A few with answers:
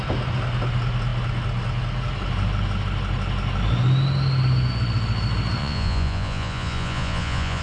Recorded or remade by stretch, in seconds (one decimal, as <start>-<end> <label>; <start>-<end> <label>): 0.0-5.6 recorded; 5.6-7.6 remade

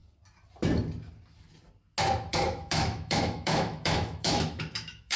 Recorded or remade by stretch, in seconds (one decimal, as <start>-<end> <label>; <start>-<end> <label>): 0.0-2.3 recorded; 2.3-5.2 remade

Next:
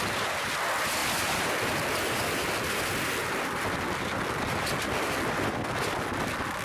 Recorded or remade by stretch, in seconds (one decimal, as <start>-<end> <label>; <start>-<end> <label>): 0.0-6.6 recorded

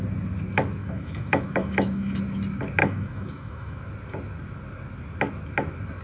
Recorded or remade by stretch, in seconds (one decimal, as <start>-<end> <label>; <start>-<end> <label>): 0.0-0.8 recorded; 0.8-2.2 remade; 2.2-2.8 recorded; 2.8-3.8 remade; 3.8-6.0 recorded

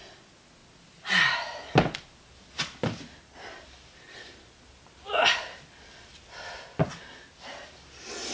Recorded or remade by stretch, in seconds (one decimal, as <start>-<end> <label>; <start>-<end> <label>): 0.0-8.3 recorded

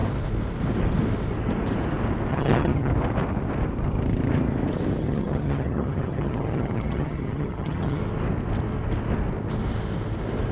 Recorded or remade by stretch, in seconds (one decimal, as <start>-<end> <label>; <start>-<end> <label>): 0.0-2.3 recorded; 2.3-2.9 remade; 2.9-5.0 recorded; 5.0-8.0 remade; 8.0-10.5 recorded